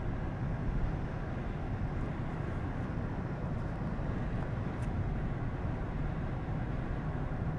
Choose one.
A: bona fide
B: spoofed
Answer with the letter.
A